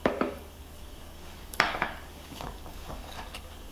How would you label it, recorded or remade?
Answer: remade